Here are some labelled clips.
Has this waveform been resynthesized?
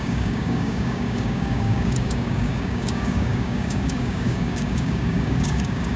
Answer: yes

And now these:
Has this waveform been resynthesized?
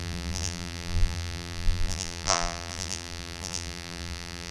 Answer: yes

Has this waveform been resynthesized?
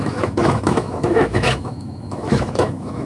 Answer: yes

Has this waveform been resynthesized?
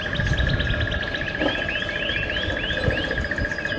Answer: no